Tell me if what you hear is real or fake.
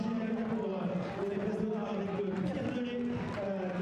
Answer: real